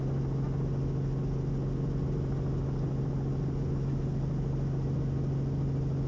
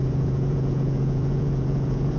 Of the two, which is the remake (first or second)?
second